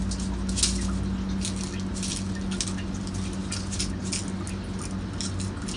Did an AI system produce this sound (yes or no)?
no